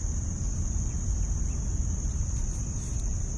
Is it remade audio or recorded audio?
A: remade